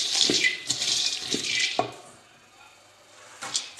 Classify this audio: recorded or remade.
recorded